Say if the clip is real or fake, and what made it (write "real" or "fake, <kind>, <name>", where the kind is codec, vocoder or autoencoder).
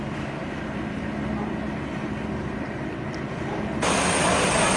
real